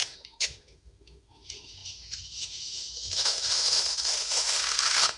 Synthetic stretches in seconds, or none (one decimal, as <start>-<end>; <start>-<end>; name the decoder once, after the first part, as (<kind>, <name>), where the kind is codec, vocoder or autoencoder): 0.0-5.2 (autoencoder, DAC-VAE)